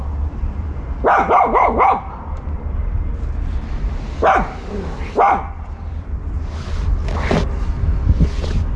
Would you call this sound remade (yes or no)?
no